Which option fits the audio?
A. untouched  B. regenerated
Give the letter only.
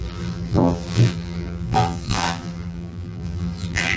B